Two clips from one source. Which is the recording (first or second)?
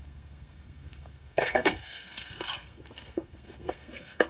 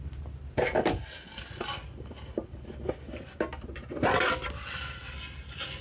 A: second